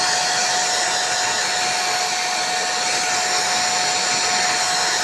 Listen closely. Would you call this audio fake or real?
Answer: real